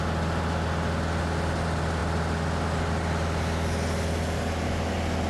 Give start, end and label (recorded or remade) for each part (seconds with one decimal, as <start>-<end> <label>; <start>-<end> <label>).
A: 0.0-5.3 recorded